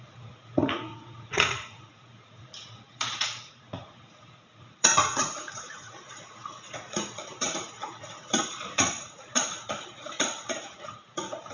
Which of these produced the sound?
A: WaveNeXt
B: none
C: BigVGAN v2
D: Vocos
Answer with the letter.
D